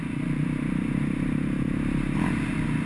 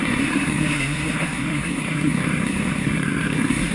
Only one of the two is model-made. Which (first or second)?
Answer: second